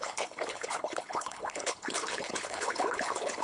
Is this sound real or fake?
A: fake